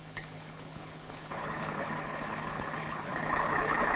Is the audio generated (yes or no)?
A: yes